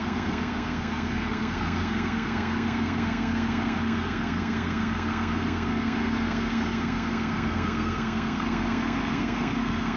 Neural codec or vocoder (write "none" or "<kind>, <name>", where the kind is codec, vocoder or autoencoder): codec, SNAC